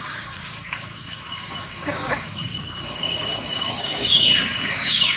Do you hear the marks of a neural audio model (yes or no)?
yes